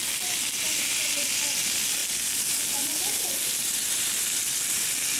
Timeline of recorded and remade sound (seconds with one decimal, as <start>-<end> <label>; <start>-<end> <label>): 0.0-5.2 recorded

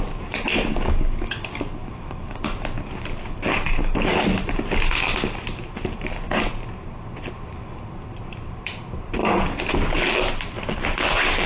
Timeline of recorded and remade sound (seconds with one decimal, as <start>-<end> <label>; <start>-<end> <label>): 0.0-0.7 recorded; 0.7-2.3 remade; 2.3-11.5 recorded

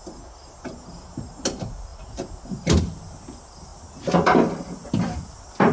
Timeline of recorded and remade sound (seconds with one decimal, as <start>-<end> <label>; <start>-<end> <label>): 0.0-5.7 recorded

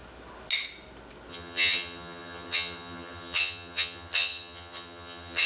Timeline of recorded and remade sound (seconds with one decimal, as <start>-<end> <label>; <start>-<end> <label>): 0.0-1.3 recorded; 1.3-5.5 remade

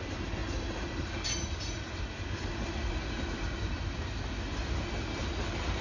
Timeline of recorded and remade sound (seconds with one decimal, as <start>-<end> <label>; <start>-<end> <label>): 0.0-5.8 recorded